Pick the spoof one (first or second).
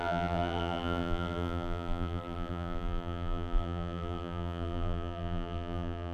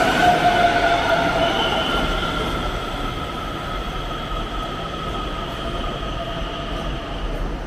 first